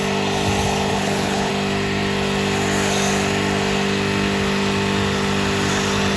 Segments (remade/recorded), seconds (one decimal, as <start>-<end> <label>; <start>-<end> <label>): 0.0-0.9 recorded; 0.9-1.5 remade; 1.5-6.2 recorded